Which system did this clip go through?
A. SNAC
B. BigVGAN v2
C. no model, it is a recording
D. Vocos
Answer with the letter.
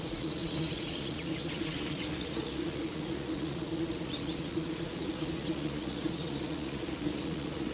D